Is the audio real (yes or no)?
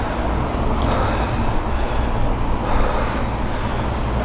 yes